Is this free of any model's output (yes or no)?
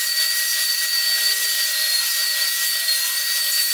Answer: no